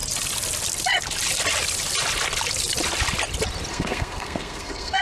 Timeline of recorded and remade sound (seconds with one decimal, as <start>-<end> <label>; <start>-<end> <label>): 0.0-3.7 recorded; 3.7-5.0 remade

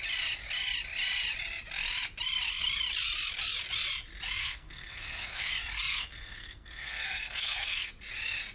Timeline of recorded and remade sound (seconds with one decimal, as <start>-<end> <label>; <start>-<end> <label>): 0.0-4.4 recorded; 4.4-5.5 remade; 5.5-5.9 recorded; 5.9-7.9 remade; 7.9-8.5 recorded

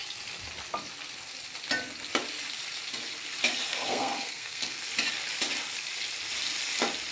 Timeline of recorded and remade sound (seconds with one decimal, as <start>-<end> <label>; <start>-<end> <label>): 0.0-3.7 recorded; 3.7-4.8 remade; 4.8-7.1 recorded

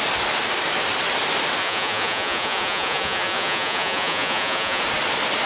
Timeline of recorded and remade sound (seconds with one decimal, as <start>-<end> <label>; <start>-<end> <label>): 0.0-1.6 recorded; 1.6-4.8 remade; 4.8-5.5 recorded

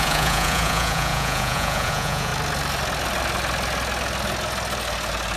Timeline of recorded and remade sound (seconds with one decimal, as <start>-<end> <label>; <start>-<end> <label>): 0.0-2.3 remade; 2.3-5.4 recorded

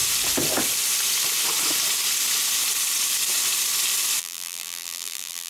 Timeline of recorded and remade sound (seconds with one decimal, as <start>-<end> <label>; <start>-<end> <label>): 0.0-4.2 recorded; 4.2-5.5 remade

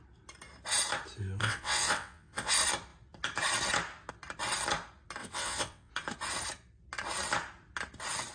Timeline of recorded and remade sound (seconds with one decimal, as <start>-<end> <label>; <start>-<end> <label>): 0.0-1.4 recorded; 1.4-2.5 remade; 2.5-5.2 recorded; 5.2-5.9 remade; 5.9-8.3 recorded